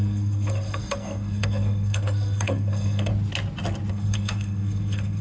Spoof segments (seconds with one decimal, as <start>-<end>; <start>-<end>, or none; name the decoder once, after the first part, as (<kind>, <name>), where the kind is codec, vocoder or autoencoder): 0.0-3.1 (codec, SNAC); 3.9-5.2